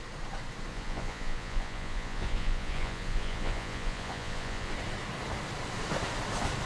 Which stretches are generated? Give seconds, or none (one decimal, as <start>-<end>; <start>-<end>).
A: 0.7-4.7

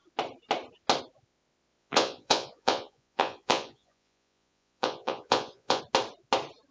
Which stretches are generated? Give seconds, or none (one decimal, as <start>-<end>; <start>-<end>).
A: 1.8-5.8

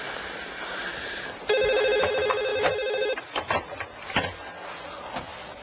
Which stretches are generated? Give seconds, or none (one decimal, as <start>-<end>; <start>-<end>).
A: none

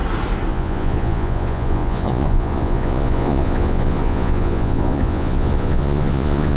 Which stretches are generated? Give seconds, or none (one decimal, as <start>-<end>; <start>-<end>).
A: 0.5-6.6

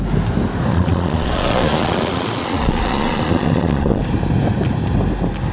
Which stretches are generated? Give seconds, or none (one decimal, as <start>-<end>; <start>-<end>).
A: 0.7-4.0

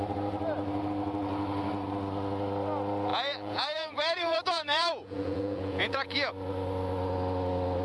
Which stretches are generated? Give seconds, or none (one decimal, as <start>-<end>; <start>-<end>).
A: 3.1-6.3